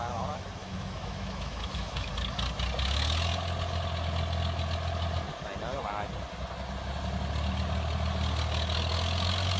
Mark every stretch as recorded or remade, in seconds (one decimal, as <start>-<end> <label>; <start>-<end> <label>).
0.0-0.6 recorded; 0.6-2.1 remade; 2.1-9.6 recorded